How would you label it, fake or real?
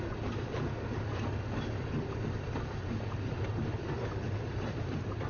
fake